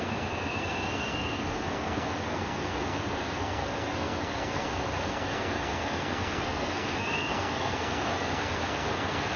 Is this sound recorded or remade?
remade